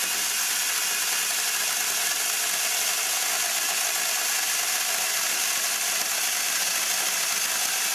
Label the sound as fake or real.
real